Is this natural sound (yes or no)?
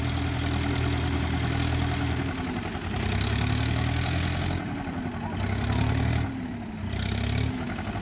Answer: yes